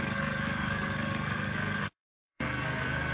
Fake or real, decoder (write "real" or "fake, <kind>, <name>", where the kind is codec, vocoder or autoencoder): fake, codec, SNAC